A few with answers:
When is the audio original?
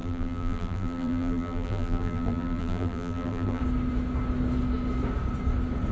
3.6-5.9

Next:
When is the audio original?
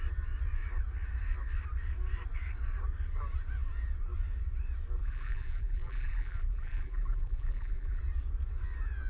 0.0-5.0; 8.0-9.1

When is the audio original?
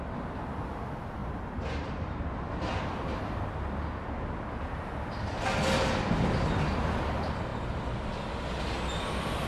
0.0-9.5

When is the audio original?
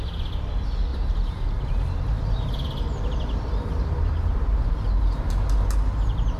0.0-0.9; 4.7-6.4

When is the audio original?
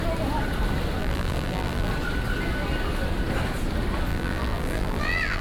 0.0-1.0; 1.9-4.1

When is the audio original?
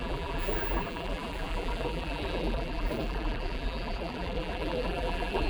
none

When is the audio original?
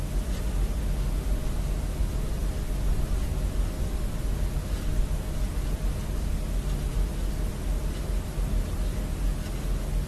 0.0-10.1